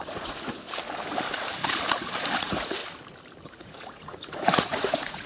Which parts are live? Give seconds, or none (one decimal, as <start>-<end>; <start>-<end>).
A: 0.6-2.4; 2.8-3.6